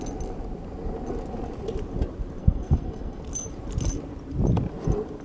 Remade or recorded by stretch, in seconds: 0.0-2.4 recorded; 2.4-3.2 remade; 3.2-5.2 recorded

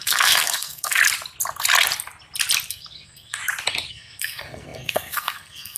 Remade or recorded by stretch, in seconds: 0.0-1.0 remade; 1.0-2.7 recorded; 2.7-3.4 remade; 3.4-3.9 recorded; 3.9-5.8 remade

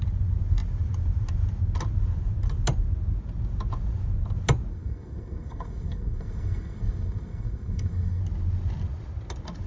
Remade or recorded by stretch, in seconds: 0.0-4.7 recorded; 4.7-8.2 remade; 8.2-9.7 recorded

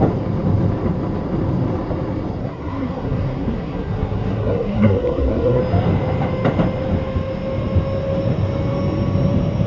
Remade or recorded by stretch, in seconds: 0.0-2.4 recorded; 2.4-5.6 remade; 5.6-9.7 recorded

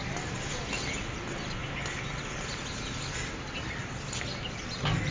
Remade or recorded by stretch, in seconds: 0.0-5.1 recorded

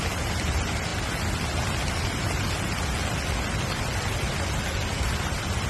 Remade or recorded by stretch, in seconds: 0.0-5.7 recorded

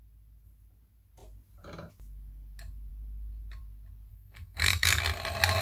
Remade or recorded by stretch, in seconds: 0.0-4.1 recorded; 4.1-5.0 remade; 5.0-5.6 recorded